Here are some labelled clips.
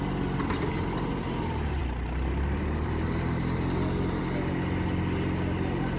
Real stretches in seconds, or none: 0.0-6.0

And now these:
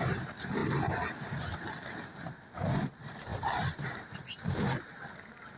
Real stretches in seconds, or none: 0.6-2.0

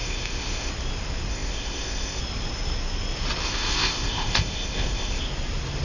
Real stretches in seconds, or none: 0.7-1.3; 2.2-3.4; 5.2-5.8

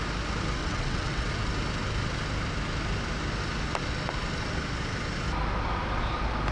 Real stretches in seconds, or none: 0.0-0.6; 1.3-6.5